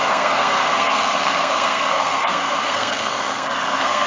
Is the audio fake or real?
fake